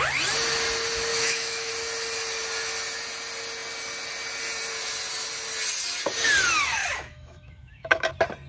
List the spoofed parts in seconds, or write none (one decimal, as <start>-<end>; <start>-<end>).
1.1-1.7; 6.8-8.1